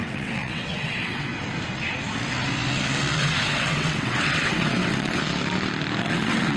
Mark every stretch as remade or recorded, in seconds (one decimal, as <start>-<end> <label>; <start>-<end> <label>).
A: 0.0-1.3 remade; 1.3-3.2 recorded; 3.2-5.2 remade; 5.2-6.0 recorded; 6.0-6.6 remade